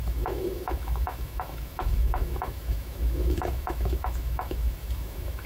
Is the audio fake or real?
fake